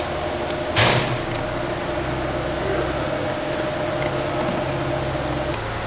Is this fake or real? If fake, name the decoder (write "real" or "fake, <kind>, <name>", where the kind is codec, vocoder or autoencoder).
real